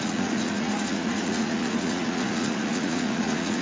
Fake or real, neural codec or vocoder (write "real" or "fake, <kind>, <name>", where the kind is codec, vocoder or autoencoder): fake, vocoder, Vocos